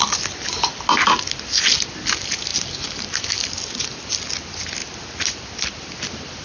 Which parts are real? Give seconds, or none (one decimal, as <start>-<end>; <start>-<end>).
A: 0.0-6.4